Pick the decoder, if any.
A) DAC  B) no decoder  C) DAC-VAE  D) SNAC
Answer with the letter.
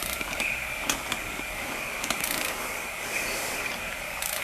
A